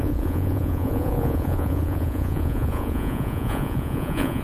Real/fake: fake